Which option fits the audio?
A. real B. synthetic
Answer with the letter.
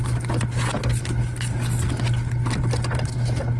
A